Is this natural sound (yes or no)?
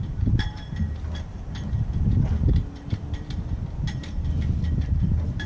yes